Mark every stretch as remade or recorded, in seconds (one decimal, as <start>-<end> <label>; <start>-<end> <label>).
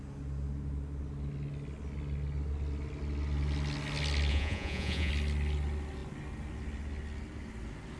0.0-4.3 recorded; 4.3-5.1 remade; 5.1-8.0 recorded